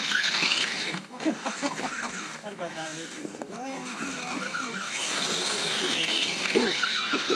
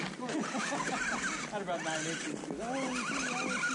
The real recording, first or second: second